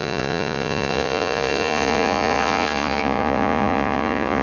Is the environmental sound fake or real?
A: fake